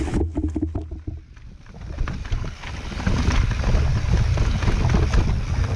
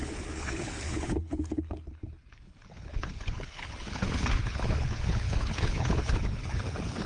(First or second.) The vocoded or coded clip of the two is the second